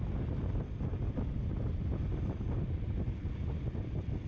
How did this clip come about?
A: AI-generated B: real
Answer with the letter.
B